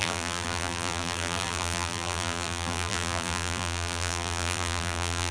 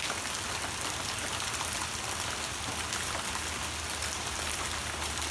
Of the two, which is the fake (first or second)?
first